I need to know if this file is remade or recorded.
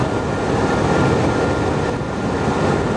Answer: recorded